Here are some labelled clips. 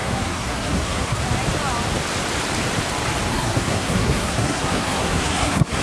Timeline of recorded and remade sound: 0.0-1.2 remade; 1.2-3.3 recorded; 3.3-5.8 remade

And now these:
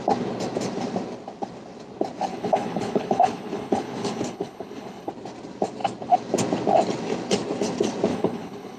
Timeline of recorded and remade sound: 0.0-2.3 recorded; 2.3-5.1 remade; 5.1-8.1 recorded; 8.1-8.8 remade

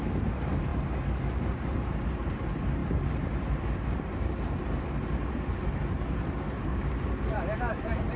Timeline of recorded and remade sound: 0.0-6.7 remade; 6.7-7.3 recorded; 7.3-8.2 remade

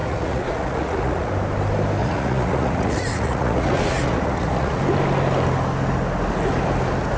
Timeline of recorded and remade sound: 0.0-1.3 remade; 1.3-2.0 recorded; 2.0-4.8 remade; 4.8-7.2 recorded

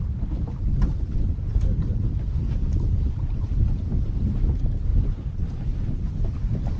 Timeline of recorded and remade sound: 0.0-4.9 recorded; 4.9-6.8 remade

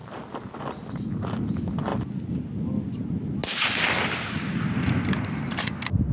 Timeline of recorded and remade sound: 0.0-6.1 recorded

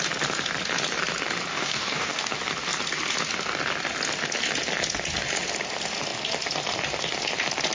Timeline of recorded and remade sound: 0.0-1.5 recorded; 1.5-2.3 remade; 2.3-7.7 recorded

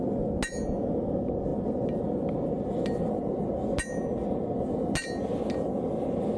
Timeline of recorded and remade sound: 0.0-6.4 recorded